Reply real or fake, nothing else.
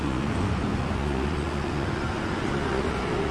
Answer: fake